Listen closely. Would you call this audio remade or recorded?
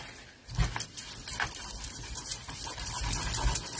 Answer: recorded